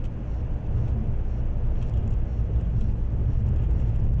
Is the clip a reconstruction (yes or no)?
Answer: no